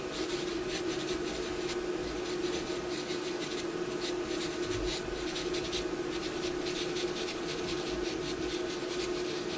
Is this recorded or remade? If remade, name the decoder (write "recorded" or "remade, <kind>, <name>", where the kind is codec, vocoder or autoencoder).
recorded